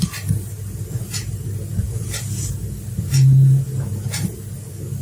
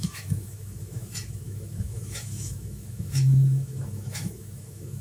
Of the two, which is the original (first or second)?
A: first